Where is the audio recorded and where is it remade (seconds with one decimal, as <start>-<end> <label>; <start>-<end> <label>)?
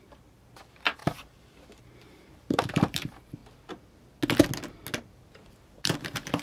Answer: 0.0-3.4 remade; 3.4-5.5 recorded; 5.5-6.4 remade